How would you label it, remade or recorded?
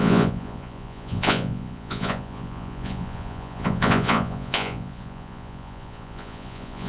remade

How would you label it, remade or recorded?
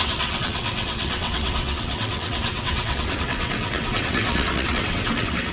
remade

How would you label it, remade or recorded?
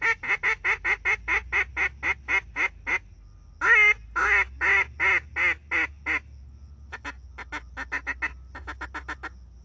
recorded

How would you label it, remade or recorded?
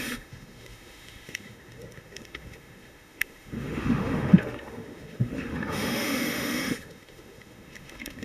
remade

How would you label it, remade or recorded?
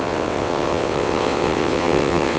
remade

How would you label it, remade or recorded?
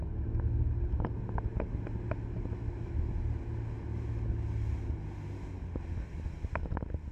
recorded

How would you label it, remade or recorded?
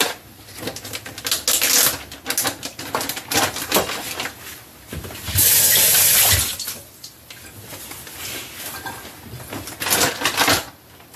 recorded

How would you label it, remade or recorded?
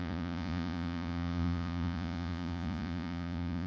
remade